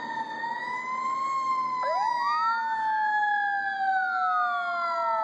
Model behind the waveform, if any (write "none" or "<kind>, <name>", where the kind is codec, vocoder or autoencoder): none